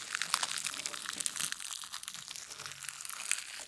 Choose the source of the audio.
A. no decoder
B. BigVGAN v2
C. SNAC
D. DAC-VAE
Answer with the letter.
A